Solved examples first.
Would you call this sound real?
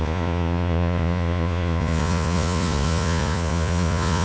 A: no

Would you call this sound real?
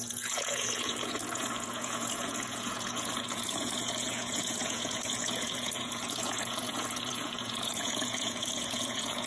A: no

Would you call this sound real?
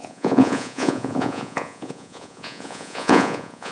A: no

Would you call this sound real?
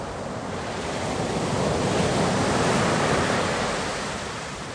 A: yes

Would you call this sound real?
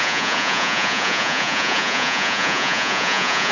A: no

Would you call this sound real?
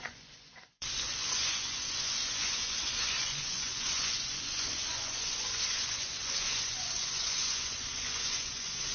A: no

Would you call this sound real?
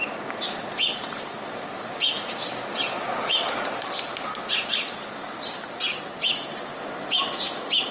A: yes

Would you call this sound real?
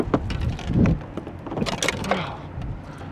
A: yes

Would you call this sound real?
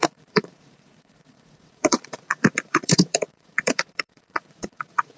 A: no